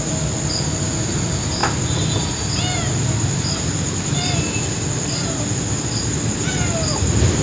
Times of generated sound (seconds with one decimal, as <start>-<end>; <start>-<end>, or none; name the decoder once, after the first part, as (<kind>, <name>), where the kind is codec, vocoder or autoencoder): none